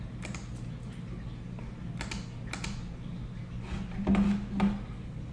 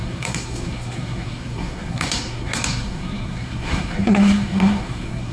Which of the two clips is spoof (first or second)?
second